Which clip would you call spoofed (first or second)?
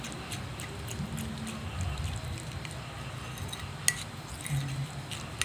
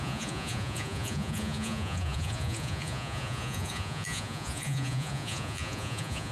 second